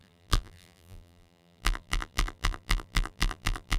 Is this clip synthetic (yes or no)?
yes